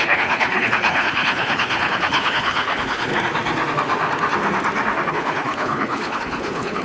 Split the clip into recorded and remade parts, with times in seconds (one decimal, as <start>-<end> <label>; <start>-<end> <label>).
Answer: 0.0-3.1 remade; 3.1-5.1 recorded; 5.1-6.8 remade